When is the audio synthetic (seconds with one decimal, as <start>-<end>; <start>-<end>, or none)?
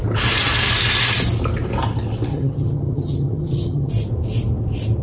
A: 2.3-3.9